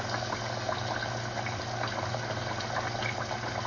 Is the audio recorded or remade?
recorded